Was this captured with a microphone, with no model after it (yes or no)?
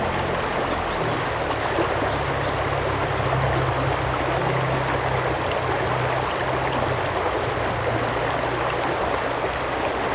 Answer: yes